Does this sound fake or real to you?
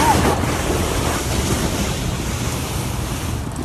real